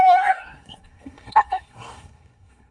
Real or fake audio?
fake